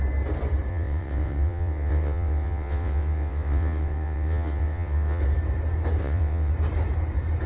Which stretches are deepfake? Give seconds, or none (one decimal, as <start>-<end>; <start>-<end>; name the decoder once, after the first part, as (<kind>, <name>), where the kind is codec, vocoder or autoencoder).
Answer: 0.7-5.2 (vocoder, WaveNeXt); 6.0-6.5

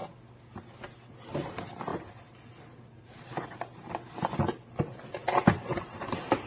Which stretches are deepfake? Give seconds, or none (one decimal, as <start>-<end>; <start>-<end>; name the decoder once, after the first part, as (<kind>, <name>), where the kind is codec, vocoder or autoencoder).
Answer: 5.2-5.9 (vocoder, BigVGAN v2)

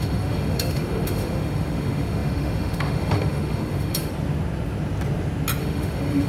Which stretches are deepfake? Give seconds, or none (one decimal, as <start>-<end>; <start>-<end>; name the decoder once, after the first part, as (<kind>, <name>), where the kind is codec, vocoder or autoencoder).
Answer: 0.0-4.1 (autoencoder, DAC-VAE); 5.6-6.3

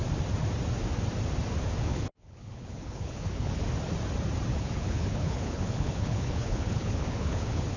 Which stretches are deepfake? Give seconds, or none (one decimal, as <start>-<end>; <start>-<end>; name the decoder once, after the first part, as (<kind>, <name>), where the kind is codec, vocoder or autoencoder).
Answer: 1.9-3.5 (codec, HILCodec); 4.5-7.8

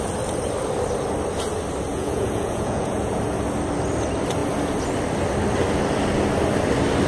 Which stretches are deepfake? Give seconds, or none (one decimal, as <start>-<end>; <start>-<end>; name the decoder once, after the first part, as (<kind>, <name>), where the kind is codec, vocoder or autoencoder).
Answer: 1.9-3.2 (vocoder, Vocos)

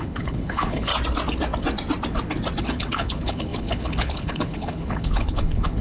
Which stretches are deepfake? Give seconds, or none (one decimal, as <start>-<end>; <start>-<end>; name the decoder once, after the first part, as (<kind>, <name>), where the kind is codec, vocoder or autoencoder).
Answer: 0.0-0.9 (codec, HILCodec); 2.6-5.8

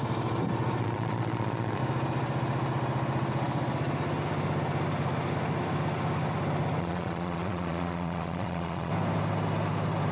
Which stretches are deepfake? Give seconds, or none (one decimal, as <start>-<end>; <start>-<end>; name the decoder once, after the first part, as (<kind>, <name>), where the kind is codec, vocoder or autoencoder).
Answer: 0.8-1.8 (vocoder, Vocos); 6.8-8.9

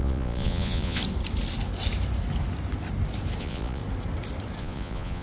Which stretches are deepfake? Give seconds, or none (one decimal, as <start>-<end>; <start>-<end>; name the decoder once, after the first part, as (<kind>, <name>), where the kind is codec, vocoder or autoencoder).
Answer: 0.0-1.0 (vocoder, Vocos); 3.4-3.8; 4.6-5.2